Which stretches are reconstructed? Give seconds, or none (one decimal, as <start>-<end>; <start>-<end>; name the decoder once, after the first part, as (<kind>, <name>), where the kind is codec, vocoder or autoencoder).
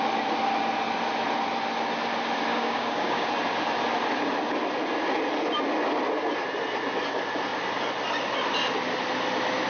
2.5-3.3 (codec, DAC)